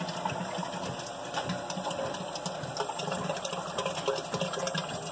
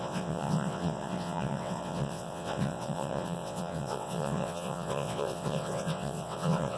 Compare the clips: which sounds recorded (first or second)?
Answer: first